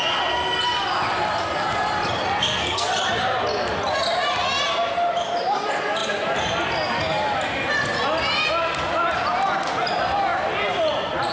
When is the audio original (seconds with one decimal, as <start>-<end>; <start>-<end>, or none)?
0.0-2.4; 2.9-11.3